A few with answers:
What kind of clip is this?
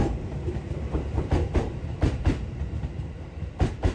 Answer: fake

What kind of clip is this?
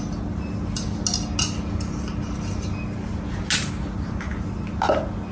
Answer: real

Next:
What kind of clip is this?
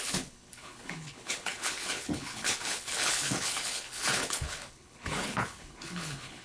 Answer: fake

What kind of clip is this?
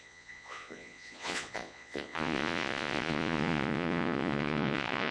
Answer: fake